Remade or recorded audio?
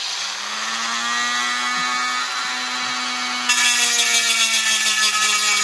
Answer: recorded